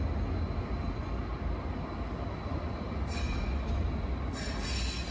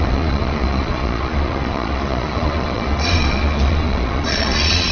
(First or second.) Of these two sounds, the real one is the first